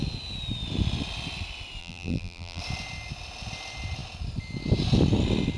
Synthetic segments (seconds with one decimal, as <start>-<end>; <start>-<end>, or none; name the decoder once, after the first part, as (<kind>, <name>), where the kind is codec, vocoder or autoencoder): 1.8-2.6 (vocoder, BigVGAN v2)